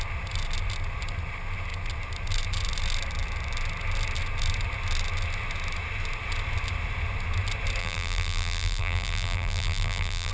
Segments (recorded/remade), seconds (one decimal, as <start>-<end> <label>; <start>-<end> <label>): 0.0-7.8 recorded; 7.8-10.3 remade